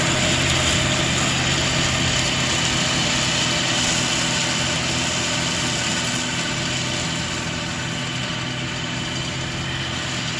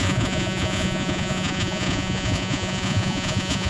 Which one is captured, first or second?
first